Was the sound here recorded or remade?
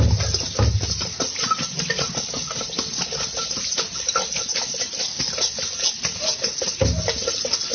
recorded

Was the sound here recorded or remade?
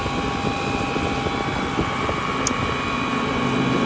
recorded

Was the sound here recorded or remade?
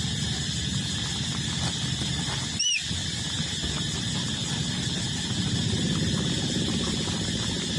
recorded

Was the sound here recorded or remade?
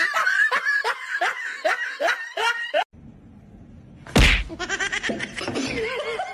recorded